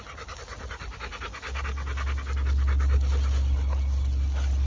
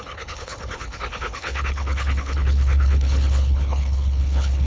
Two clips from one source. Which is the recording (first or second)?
first